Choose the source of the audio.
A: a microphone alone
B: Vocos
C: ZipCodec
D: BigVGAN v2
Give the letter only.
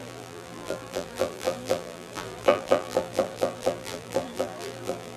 D